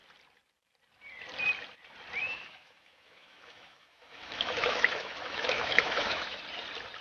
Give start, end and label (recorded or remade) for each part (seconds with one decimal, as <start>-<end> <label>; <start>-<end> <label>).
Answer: 0.0-2.2 recorded; 2.2-6.4 remade; 6.4-7.0 recorded